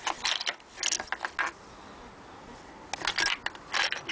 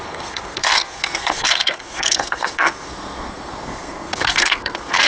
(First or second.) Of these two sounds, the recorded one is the first